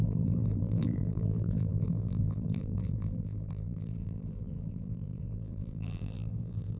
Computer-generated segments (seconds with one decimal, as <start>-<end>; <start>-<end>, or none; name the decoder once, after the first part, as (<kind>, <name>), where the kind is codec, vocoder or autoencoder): 0.0-6.8 (vocoder, BigVGAN v2)